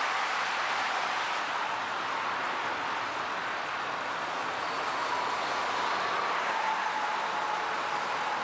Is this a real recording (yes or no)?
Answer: yes